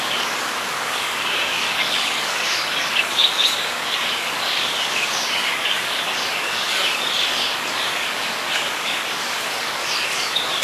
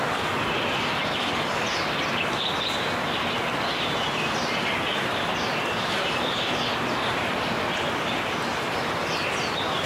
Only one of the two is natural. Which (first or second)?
second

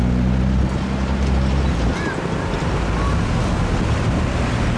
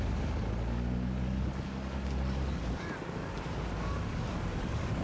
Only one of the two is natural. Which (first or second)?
first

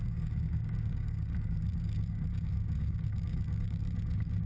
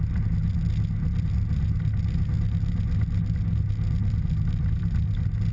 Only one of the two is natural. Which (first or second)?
second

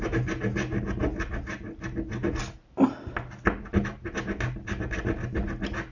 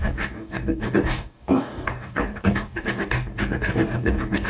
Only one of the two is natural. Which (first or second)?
first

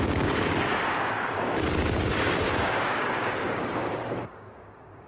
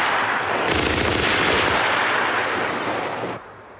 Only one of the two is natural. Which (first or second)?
second